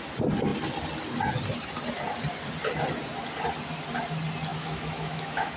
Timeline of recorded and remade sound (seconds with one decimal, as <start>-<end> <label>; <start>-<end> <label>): 0.0-4.5 recorded; 4.5-5.6 remade